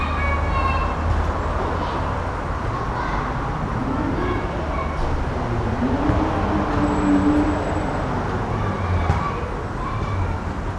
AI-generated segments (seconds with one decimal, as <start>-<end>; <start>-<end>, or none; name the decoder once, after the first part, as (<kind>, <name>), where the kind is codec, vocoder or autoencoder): none